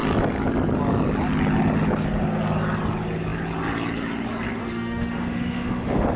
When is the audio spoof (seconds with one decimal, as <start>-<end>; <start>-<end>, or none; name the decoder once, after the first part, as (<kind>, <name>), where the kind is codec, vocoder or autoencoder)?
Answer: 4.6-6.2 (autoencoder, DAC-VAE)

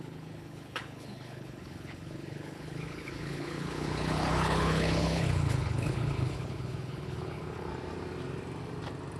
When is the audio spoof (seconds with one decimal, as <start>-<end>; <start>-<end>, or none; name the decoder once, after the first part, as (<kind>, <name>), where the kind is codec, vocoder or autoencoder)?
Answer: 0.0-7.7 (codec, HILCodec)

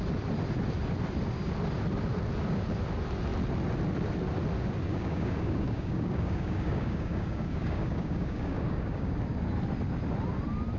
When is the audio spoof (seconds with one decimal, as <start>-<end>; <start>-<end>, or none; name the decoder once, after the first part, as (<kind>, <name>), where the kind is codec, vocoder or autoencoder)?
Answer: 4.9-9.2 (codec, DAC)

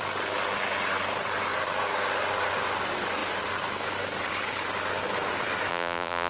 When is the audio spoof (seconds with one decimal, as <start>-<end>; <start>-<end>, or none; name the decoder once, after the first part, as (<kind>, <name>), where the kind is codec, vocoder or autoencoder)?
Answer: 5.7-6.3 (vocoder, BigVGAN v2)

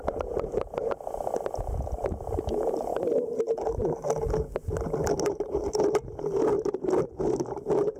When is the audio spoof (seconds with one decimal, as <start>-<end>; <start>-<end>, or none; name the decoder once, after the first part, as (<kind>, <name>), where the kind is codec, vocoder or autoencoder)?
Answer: none

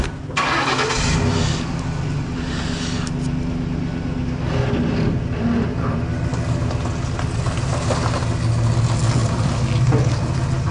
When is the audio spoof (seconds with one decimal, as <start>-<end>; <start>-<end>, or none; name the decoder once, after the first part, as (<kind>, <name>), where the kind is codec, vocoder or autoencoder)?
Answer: 9.2-10.7 (vocoder, BigVGAN v2)

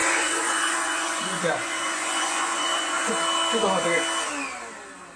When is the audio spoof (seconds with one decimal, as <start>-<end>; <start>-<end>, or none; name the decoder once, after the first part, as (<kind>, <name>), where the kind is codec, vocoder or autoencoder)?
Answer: 0.0-3.1 (vocoder, Vocos)

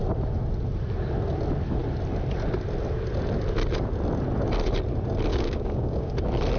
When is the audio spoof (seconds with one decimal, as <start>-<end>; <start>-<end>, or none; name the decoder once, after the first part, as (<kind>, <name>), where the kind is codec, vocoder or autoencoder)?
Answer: 5.3-6.1 (codec, DAC)